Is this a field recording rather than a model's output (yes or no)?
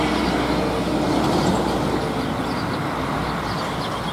yes